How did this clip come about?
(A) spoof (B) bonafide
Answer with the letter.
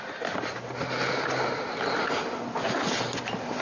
B